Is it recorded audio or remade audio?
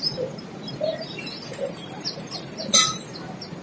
remade